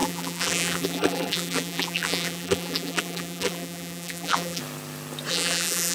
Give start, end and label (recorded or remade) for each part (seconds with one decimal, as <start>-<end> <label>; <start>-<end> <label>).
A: 0.0-4.6 remade; 4.6-5.3 recorded; 5.3-5.9 remade